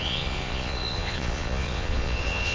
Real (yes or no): no